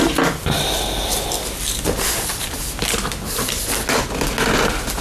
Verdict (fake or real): real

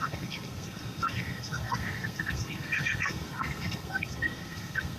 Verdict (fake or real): fake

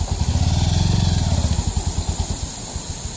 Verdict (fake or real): real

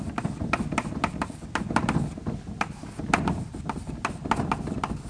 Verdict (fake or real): real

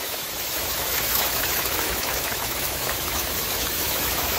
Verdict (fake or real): fake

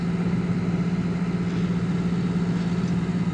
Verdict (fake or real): real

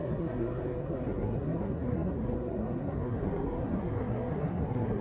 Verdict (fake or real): fake